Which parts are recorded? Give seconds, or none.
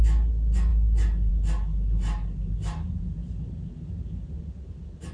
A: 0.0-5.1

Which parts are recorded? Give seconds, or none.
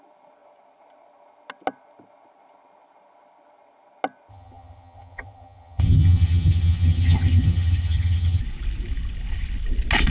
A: 0.0-4.3; 8.4-10.1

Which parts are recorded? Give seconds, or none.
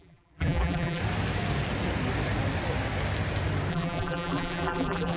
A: 1.0-3.7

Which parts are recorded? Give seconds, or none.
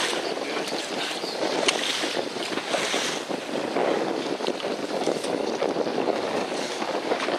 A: 0.0-3.8; 4.3-4.8; 5.5-5.9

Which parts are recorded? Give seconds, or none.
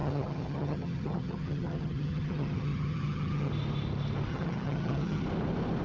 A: 3.5-4.3; 5.2-5.8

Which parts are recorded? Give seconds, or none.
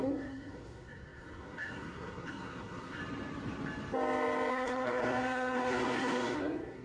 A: 3.0-4.5